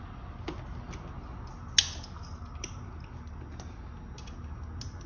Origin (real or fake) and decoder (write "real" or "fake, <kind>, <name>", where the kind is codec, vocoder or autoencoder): real